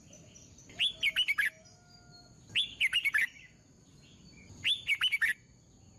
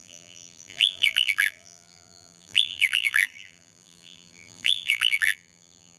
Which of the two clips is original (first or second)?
first